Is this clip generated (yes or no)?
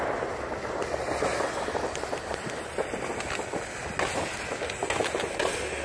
no